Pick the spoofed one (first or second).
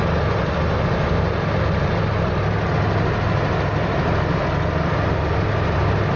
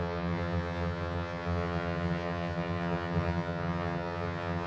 second